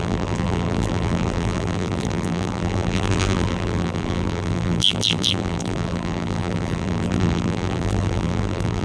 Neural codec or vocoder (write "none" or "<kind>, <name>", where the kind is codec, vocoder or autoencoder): vocoder, BigVGAN v2